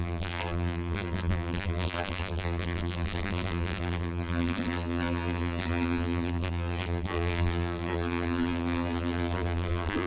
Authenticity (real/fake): fake